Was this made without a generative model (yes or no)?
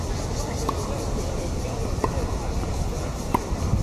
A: yes